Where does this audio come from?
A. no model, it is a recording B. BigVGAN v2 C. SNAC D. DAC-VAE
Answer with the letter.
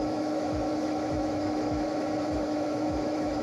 D